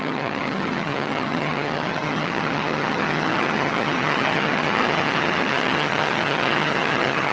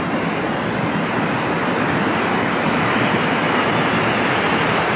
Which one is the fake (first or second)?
first